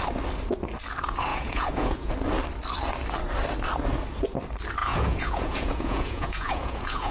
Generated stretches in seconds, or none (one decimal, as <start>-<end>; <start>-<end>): 1.3-2.1; 4.8-7.1